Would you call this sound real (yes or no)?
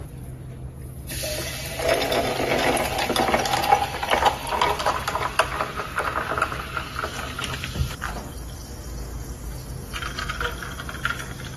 yes